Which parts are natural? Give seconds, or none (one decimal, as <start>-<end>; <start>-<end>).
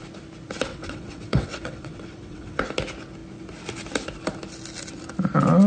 0.0-0.7; 2.6-5.7